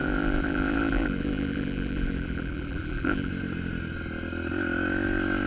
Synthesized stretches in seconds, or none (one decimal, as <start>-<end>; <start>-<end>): 0.0-3.3